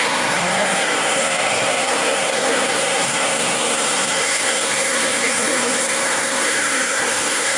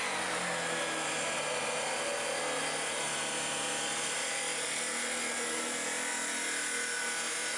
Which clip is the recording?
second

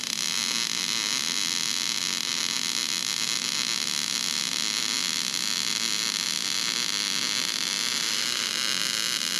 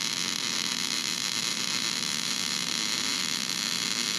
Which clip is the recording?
first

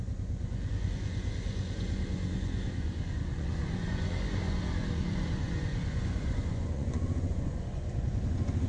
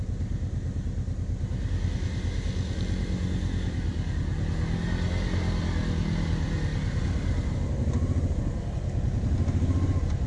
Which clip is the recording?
second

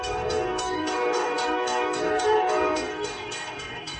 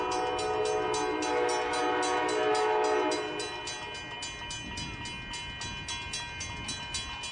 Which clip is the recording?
second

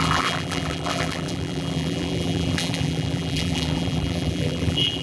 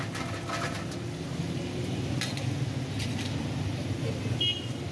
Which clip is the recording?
second